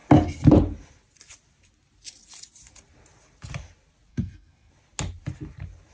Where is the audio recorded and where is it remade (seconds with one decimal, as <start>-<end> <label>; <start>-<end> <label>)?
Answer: 0.0-4.1 recorded; 4.1-4.7 remade; 4.7-5.9 recorded